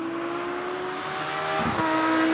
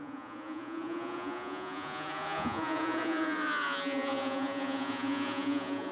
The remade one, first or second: second